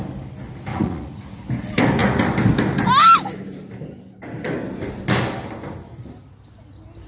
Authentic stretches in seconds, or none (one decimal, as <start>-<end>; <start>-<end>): 0.0-0.7; 1.4-7.1